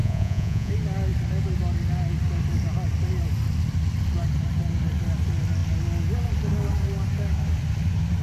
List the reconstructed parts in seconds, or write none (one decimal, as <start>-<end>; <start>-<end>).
0.0-0.7